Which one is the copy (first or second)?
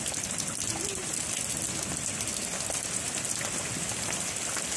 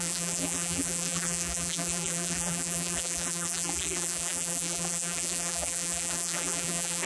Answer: second